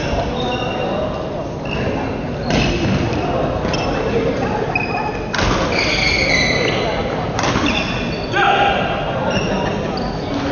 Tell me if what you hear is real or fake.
real